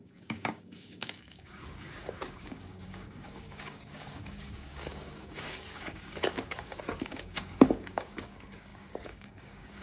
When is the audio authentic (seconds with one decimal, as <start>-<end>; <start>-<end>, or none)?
none